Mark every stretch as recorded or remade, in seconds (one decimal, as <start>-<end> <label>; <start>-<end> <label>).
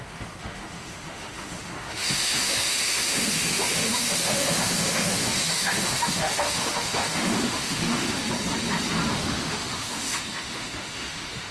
0.0-8.2 remade; 8.2-9.1 recorded; 9.1-11.5 remade